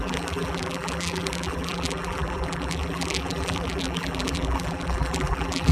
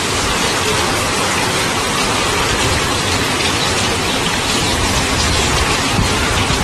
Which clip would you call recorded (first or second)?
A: second